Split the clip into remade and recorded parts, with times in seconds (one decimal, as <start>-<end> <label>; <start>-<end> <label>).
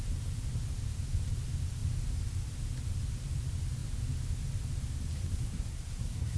0.0-5.1 recorded; 5.1-6.4 remade